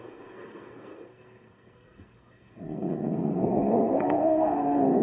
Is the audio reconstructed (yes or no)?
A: yes